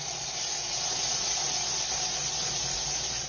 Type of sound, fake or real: real